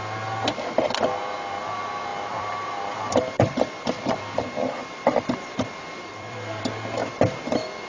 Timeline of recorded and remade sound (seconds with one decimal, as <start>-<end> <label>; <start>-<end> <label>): 0.0-2.1 recorded; 2.1-6.6 remade; 6.6-7.0 recorded; 7.0-7.9 remade